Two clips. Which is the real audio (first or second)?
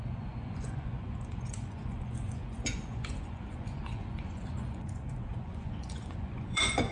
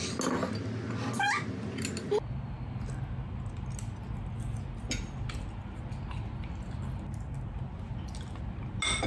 second